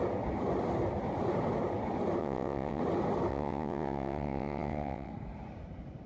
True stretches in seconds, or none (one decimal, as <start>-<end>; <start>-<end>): 0.0-2.2; 2.8-3.3; 5.1-6.1